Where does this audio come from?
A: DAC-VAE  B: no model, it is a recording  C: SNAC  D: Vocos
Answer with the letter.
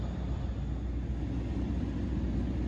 B